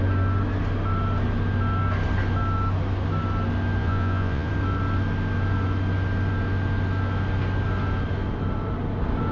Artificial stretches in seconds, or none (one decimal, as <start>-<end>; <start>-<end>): 3.8-4.5